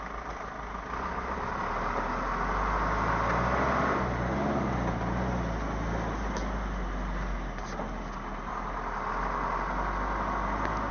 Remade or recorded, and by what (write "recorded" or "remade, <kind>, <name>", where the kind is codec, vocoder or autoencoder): recorded